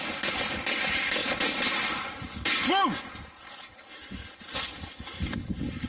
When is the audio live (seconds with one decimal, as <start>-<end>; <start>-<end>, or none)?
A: 0.0-5.9